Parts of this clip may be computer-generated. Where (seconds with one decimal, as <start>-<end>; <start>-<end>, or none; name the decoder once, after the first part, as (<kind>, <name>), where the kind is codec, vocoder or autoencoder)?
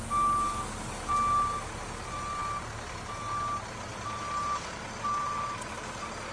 none